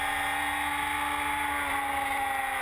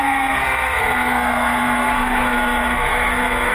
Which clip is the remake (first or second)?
second